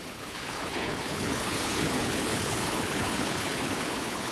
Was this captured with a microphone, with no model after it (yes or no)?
no